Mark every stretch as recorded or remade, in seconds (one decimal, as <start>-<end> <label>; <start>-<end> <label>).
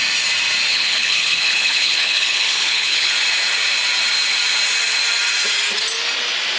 0.0-0.7 recorded; 0.7-3.1 remade; 3.1-6.6 recorded